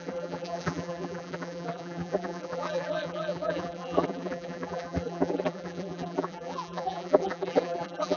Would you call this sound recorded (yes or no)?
no